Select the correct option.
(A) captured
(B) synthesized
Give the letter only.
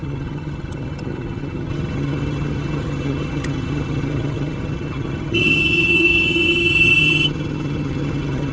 B